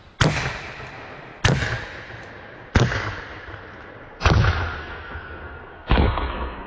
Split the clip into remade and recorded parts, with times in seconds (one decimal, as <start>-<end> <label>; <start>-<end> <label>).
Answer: 0.0-4.8 recorded; 4.8-6.7 remade